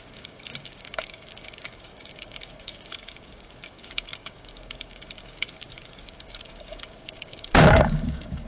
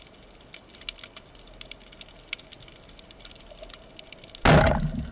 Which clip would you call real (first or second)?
second